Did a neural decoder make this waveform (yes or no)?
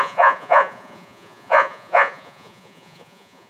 yes